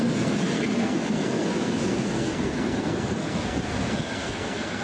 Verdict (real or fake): fake